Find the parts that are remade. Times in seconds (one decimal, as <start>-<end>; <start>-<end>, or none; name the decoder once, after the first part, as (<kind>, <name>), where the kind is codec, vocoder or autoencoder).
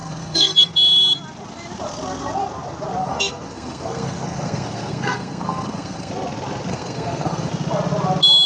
0.0-0.7 (codec, SNAC); 3.0-6.1; 6.7-7.5